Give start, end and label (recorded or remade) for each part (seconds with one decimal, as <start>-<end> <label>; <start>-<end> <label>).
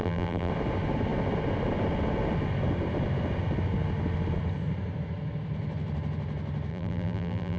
0.0-0.5 remade; 0.5-6.7 recorded; 6.7-7.6 remade